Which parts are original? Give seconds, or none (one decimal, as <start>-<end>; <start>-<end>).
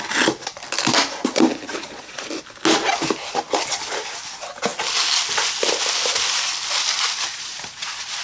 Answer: 0.0-1.7; 2.3-7.3